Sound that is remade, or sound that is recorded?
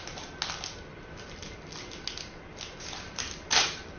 recorded